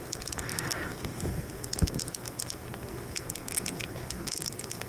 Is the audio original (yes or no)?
no